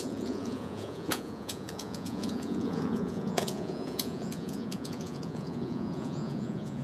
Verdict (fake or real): fake